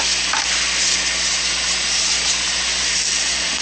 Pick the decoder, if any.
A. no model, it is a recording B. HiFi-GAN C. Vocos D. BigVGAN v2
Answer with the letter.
A